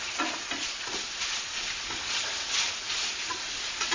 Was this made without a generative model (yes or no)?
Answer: no